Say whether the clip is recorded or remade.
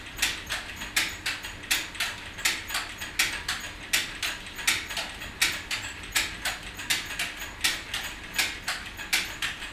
recorded